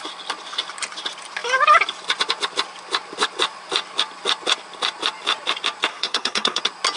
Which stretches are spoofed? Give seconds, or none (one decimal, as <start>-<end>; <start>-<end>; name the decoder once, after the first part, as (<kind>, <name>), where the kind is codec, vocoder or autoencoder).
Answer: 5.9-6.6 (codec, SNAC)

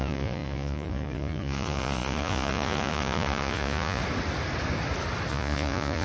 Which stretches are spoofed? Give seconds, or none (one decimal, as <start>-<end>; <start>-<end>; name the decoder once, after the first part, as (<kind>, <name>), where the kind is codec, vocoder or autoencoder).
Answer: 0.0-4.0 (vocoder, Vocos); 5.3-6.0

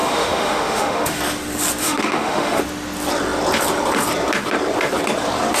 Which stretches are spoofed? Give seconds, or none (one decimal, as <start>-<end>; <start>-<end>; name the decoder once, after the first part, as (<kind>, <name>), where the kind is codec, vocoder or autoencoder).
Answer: 0.0-1.2 (autoencoder, DAC-VAE); 1.8-2.6

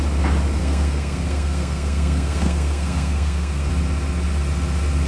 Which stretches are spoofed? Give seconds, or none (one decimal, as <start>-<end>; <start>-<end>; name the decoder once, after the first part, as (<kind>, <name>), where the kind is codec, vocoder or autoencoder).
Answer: 0.6-3.7 (codec, SNAC)